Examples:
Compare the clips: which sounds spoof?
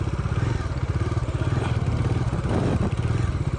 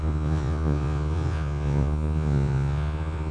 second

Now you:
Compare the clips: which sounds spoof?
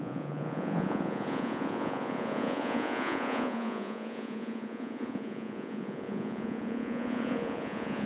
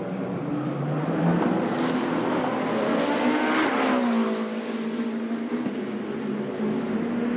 first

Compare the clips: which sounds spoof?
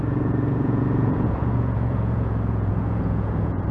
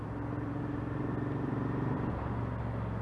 first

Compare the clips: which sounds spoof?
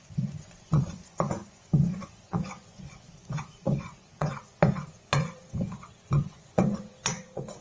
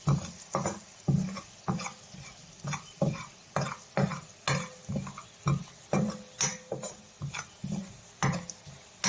first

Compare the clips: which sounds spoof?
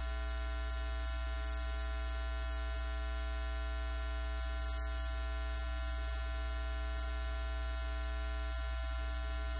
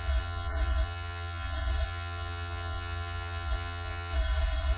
second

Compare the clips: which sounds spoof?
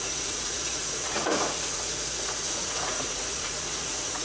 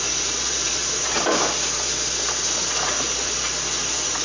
first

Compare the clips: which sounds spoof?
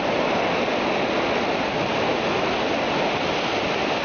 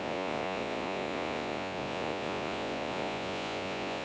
second